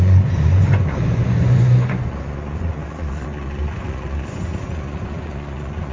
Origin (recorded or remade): remade